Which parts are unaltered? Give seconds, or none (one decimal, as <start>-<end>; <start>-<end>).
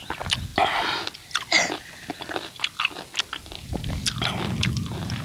0.0-5.2